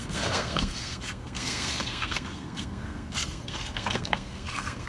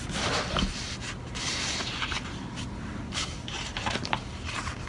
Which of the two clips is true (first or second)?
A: second